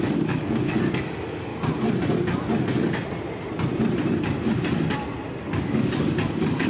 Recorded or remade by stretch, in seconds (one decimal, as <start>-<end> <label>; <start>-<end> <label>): 0.0-1.5 remade; 1.5-5.4 recorded; 5.4-6.7 remade